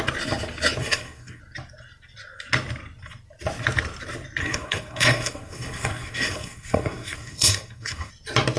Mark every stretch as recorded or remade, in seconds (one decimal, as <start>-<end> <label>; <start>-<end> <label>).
0.0-0.8 recorded; 0.8-1.4 remade; 1.4-4.4 recorded; 4.4-8.1 remade; 8.1-8.6 recorded